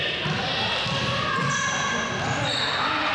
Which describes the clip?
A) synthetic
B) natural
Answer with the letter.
B